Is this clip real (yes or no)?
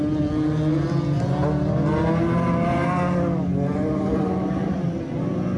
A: yes